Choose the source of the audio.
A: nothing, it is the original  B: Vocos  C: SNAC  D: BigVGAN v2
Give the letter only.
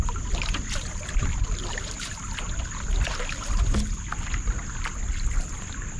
A